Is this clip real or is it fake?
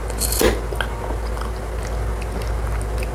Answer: real